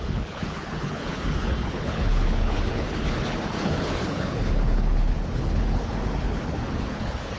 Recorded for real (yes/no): no